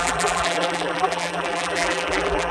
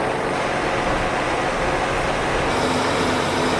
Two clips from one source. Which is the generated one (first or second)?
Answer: first